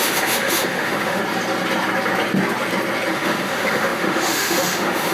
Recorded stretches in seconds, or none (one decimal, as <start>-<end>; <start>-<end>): 1.2-3.1